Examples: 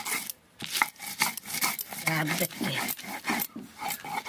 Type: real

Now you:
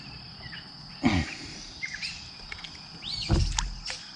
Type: real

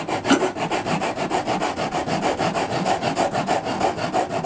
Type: real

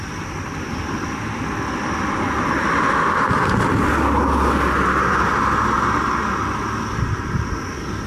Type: real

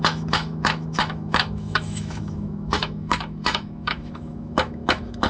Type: fake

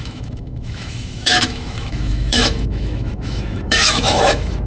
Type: fake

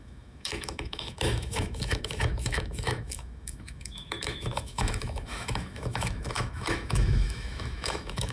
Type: fake